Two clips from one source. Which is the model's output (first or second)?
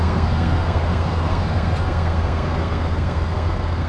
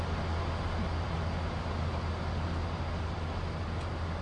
first